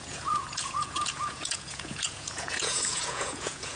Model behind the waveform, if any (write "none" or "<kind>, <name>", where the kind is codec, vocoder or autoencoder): vocoder, Vocos